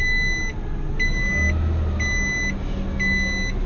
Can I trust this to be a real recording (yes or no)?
yes